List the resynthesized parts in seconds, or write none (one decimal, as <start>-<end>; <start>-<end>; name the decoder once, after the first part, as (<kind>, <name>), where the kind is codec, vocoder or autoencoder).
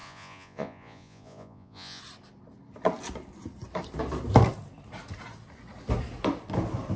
0.0-2.0 (vocoder, Vocos)